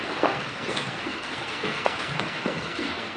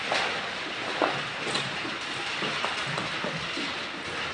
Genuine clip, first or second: second